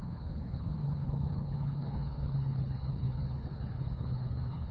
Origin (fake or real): fake